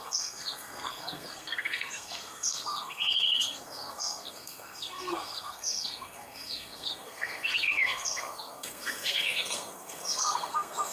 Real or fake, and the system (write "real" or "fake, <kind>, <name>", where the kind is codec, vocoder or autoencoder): fake, codec, SNAC